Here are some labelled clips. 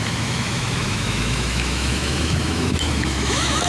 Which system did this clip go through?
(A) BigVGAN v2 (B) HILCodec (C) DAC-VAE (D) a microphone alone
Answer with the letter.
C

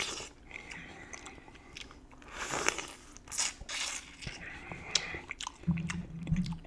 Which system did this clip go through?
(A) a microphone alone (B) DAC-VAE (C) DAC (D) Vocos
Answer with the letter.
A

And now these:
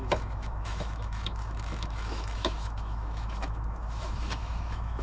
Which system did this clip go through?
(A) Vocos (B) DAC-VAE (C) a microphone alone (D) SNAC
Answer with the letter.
B